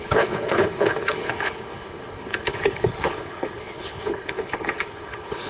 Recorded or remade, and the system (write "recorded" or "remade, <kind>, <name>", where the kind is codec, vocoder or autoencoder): remade, codec, HILCodec